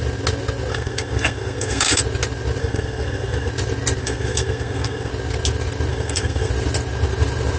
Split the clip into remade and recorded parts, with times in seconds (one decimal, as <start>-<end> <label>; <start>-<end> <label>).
0.0-0.7 recorded; 0.7-2.0 remade; 2.0-2.6 recorded; 2.6-3.5 remade; 3.5-4.0 recorded; 4.0-5.1 remade; 5.1-5.9 recorded; 5.9-6.5 remade; 6.5-7.6 recorded